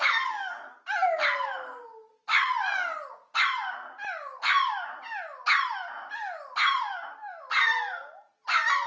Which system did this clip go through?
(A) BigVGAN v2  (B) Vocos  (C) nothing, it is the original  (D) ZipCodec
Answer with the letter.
C